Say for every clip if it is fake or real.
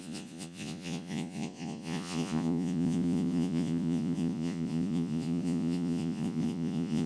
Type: fake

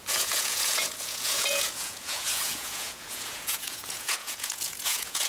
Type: fake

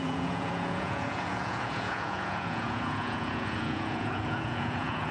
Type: fake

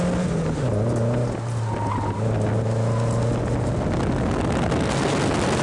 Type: real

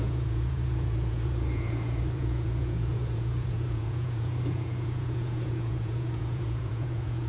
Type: fake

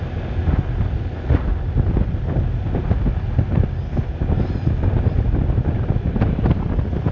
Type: real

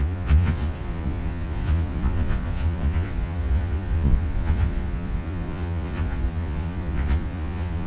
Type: fake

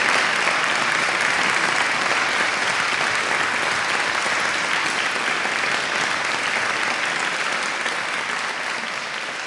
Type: real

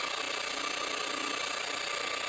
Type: real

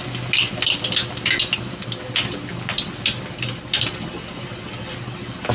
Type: real